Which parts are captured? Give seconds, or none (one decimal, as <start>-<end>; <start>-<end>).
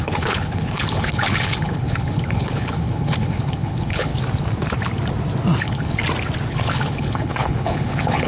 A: 4.1-5.6; 6.0-6.5